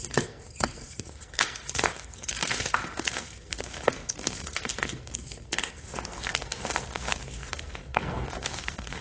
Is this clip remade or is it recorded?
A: remade